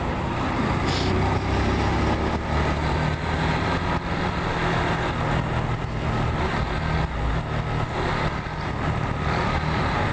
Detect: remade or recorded recorded